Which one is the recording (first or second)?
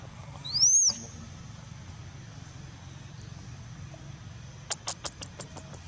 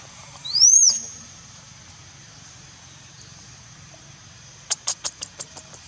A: first